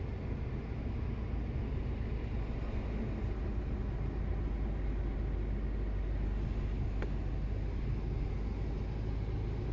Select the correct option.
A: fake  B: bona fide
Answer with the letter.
B